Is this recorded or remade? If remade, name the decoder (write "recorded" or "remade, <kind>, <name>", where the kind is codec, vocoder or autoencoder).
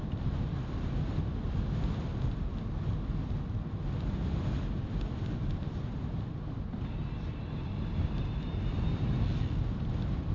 recorded